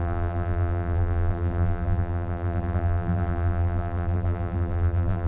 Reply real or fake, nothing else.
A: fake